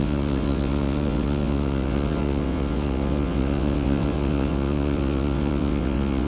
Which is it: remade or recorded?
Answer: remade